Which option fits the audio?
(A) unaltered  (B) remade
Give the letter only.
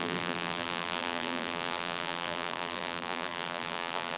B